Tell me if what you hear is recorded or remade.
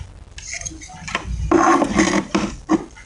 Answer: recorded